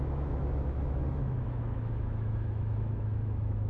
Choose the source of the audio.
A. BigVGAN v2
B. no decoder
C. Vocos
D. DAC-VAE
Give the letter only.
D